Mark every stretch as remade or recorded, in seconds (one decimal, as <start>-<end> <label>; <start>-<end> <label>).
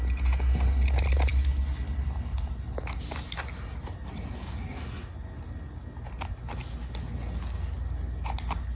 0.0-8.7 recorded